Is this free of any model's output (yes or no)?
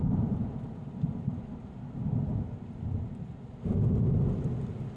yes